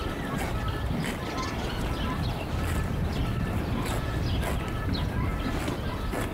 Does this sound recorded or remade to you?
recorded